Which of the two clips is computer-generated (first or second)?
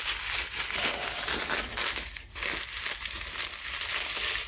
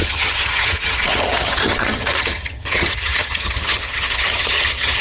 second